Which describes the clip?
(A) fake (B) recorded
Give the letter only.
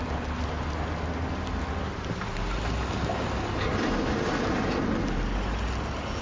B